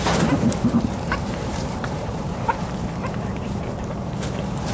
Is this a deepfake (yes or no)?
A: yes